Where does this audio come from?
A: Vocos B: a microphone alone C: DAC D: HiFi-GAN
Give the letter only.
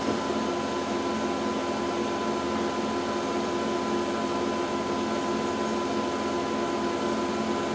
B